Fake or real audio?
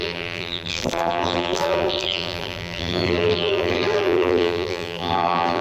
fake